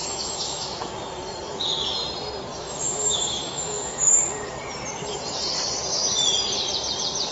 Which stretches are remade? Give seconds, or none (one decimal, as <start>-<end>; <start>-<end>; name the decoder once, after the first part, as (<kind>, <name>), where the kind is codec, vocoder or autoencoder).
0.0-0.9 (autoencoder, DAC-VAE); 2.5-4.2